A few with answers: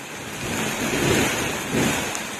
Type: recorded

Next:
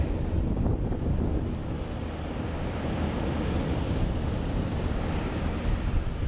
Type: recorded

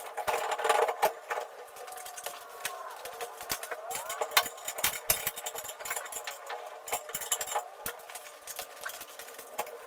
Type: recorded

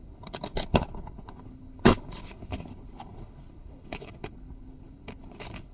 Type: remade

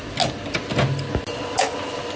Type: recorded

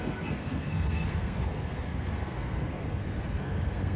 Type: remade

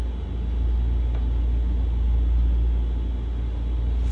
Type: recorded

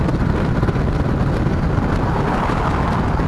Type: recorded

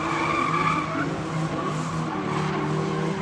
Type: recorded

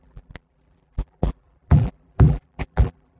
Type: remade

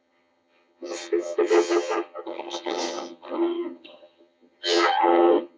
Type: remade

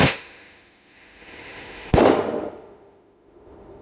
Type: remade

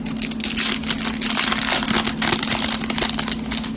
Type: recorded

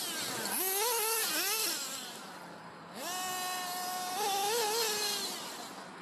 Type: recorded